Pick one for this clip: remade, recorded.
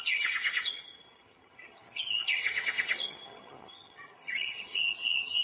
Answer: remade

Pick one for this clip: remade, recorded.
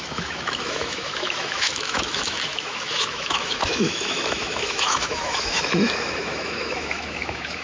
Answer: remade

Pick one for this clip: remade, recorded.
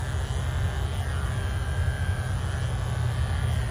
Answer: recorded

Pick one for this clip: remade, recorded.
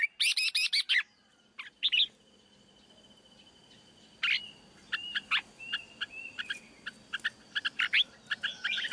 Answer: recorded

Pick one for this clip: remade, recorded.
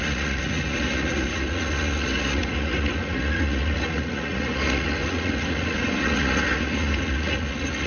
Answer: remade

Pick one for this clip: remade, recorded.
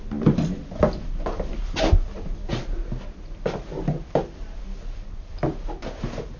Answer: recorded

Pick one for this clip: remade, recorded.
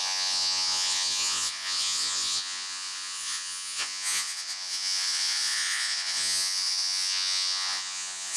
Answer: remade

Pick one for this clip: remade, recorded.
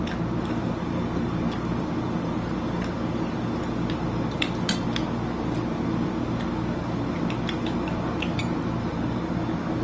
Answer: recorded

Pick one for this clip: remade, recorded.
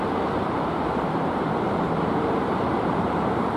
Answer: remade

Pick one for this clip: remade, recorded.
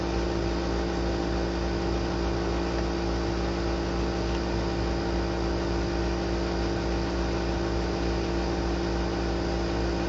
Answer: recorded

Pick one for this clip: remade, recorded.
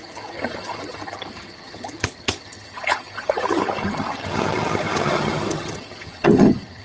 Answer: remade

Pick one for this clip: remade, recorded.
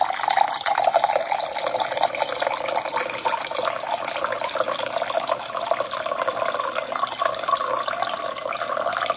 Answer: recorded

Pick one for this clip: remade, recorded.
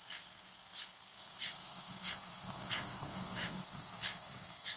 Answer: remade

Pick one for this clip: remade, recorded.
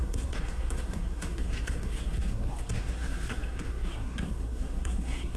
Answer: remade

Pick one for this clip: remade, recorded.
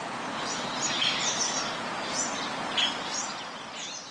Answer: recorded